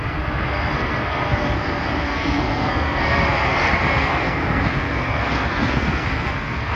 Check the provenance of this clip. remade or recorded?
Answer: remade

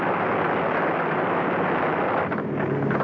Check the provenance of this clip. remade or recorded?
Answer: recorded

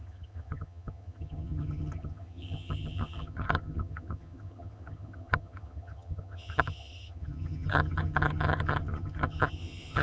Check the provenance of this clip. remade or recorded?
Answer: remade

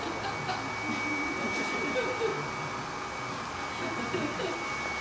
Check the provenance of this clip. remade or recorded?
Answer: recorded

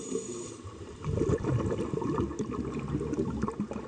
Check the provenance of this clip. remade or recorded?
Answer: recorded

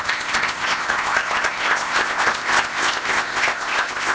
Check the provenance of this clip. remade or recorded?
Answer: remade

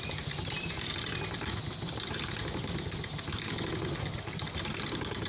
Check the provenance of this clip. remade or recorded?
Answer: recorded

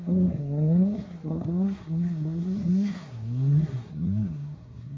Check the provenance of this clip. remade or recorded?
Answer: remade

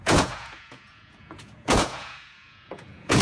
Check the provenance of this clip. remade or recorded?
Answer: remade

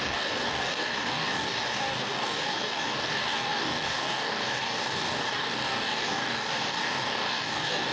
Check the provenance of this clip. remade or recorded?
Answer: remade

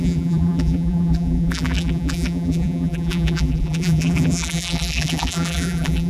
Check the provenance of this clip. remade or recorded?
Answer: remade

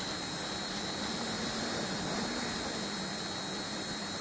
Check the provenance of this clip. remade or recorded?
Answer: recorded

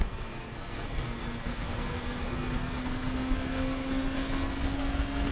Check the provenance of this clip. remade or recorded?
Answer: remade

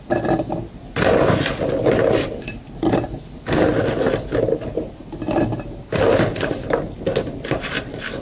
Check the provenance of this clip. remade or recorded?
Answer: recorded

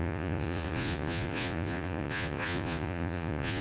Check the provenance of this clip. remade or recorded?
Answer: remade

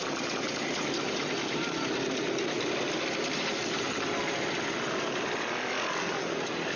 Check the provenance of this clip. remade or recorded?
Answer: recorded